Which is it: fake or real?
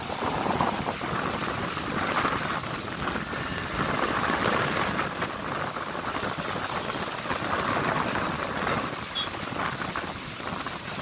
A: real